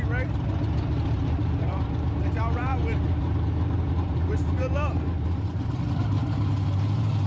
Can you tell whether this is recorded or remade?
remade